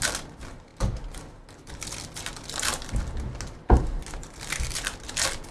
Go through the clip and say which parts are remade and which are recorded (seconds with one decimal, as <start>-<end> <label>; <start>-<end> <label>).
0.0-5.5 recorded